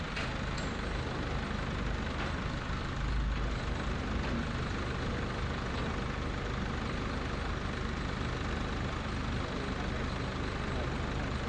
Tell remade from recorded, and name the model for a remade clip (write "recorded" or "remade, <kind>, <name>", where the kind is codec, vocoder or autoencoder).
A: recorded